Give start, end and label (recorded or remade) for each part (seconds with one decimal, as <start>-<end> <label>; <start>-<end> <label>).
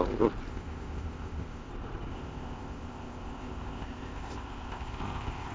0.0-0.5 recorded; 0.5-1.7 remade; 1.7-2.1 recorded; 2.1-5.5 remade